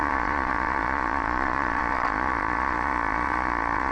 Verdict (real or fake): fake